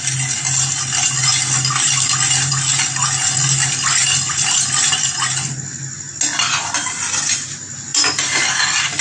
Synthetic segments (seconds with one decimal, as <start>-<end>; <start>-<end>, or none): 7.9-9.0